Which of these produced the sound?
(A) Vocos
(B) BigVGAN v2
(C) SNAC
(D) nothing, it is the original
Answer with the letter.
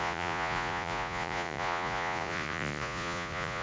A